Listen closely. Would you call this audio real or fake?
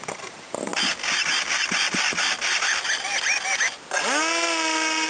real